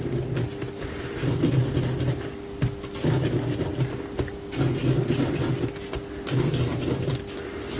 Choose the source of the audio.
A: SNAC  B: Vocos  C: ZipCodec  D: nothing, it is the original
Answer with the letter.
D